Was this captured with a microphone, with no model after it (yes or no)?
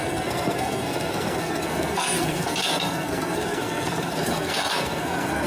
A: no